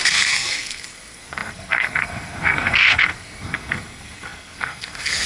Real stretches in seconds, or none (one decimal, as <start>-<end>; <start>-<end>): none